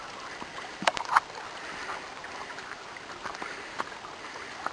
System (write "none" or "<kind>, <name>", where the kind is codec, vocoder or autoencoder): none